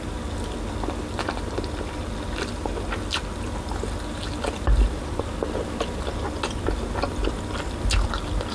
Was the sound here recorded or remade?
recorded